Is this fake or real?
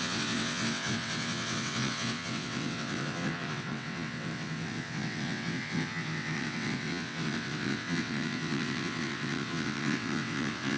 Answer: fake